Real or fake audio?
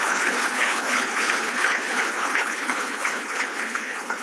fake